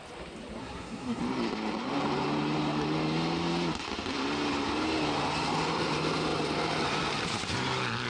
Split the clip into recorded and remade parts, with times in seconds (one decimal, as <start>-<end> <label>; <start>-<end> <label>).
0.0-0.6 recorded; 0.6-1.2 remade; 1.2-8.1 recorded